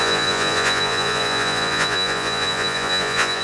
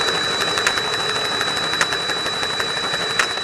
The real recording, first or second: second